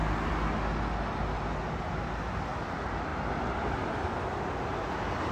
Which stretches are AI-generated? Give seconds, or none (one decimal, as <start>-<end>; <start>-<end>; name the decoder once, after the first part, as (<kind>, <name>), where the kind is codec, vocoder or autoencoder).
none